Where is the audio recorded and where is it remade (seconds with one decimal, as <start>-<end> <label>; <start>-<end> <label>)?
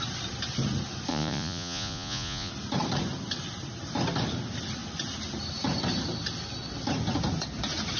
0.0-1.1 recorded; 1.1-2.5 remade; 2.5-8.0 recorded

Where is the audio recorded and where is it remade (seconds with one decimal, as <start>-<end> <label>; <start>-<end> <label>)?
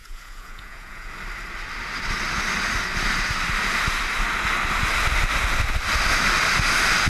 0.0-1.1 remade; 1.1-7.1 recorded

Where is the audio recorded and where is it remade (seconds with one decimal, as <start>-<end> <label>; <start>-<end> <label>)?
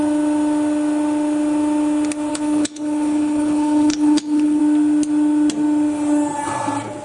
0.0-2.3 recorded; 2.3-4.6 remade; 4.6-7.0 recorded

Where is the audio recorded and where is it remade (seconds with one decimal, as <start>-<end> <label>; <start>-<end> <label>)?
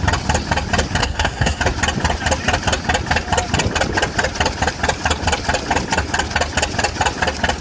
0.0-1.0 recorded; 1.0-1.6 remade; 1.6-7.6 recorded